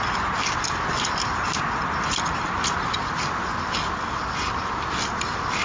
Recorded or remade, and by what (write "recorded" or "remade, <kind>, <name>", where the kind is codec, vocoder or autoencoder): recorded